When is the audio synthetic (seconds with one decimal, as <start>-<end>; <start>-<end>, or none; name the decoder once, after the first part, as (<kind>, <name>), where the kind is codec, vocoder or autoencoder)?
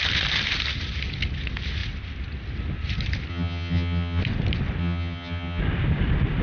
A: 3.3-4.2 (vocoder, HiFi-GAN); 4.8-5.6